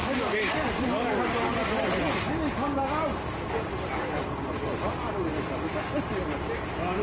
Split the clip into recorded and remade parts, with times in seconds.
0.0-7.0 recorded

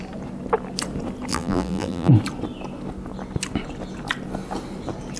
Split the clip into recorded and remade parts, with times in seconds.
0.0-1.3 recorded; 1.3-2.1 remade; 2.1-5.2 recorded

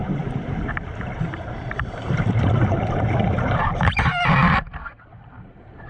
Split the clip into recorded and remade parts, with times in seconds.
0.0-5.9 remade

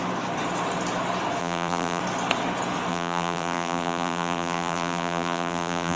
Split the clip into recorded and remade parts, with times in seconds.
0.0-1.4 recorded; 1.4-2.0 remade; 2.0-2.9 recorded; 2.9-6.0 remade